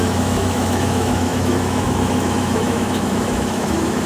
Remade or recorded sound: remade